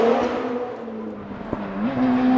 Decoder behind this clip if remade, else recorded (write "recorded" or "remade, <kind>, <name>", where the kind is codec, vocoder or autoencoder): recorded